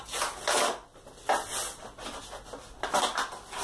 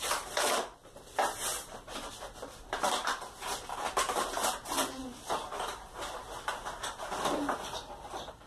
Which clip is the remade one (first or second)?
second